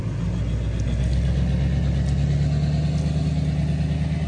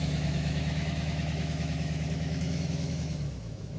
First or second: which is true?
first